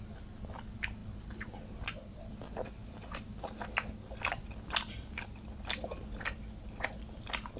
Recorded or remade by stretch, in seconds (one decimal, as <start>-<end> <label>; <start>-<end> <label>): 0.0-7.6 recorded